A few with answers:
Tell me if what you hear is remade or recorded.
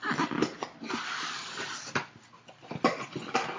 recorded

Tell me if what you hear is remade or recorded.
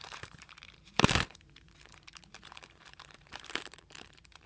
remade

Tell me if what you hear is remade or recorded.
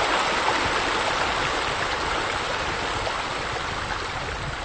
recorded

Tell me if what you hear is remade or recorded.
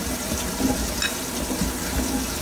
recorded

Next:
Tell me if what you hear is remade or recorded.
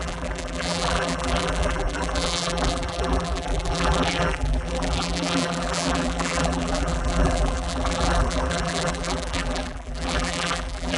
remade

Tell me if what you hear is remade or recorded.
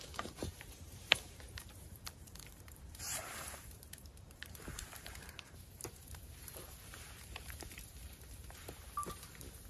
remade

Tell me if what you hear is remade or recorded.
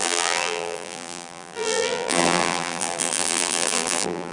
remade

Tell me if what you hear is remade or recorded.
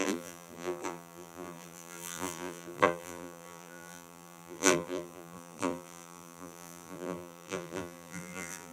remade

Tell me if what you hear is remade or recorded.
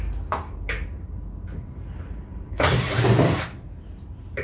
remade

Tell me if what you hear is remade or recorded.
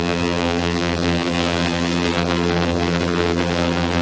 remade